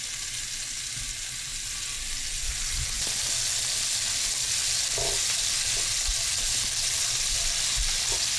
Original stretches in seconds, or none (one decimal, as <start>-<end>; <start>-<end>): 0.0-8.4